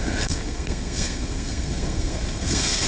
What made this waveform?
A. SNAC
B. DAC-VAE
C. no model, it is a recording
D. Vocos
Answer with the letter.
A